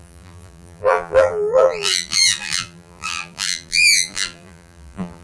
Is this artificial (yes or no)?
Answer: yes